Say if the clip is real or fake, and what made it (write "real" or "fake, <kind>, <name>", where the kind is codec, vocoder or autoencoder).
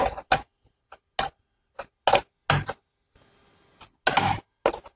real